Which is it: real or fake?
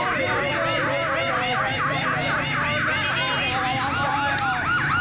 real